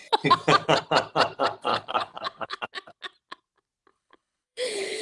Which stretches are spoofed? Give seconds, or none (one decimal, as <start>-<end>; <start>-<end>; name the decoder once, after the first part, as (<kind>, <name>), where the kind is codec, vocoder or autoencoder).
1.7-2.6 (codec, HILCodec); 3.9-5.0